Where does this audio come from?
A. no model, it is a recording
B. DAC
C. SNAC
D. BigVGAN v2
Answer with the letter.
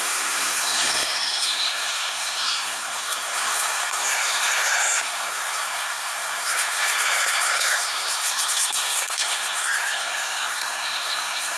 C